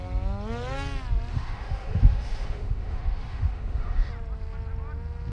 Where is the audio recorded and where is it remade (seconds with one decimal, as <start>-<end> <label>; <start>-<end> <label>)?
0.0-1.3 recorded; 1.3-4.1 remade; 4.1-5.3 recorded